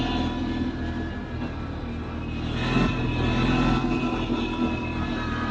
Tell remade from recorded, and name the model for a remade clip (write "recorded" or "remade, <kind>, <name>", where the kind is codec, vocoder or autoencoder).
recorded